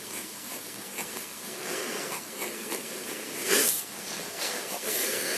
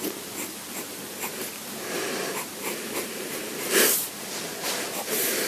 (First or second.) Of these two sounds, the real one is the second